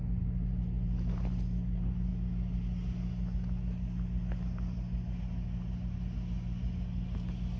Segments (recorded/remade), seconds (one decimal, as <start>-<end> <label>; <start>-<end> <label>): 0.0-7.6 recorded